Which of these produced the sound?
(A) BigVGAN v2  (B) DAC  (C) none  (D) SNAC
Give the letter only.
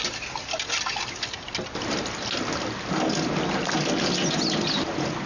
C